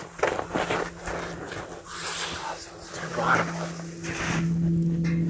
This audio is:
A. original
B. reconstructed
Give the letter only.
A